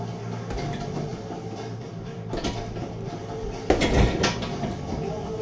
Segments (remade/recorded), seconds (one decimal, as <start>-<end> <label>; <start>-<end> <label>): 0.0-5.4 recorded